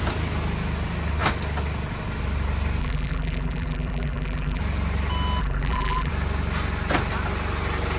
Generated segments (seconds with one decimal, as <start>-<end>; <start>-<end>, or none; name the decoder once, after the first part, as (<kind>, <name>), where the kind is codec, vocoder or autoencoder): 2.8-4.6 (vocoder, BigVGAN v2); 5.4-6.1